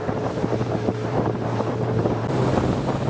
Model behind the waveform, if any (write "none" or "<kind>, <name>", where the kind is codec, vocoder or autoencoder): vocoder, BigVGAN v2